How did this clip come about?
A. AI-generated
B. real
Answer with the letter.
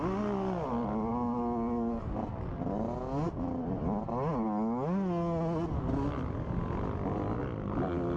B